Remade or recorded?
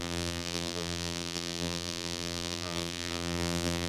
remade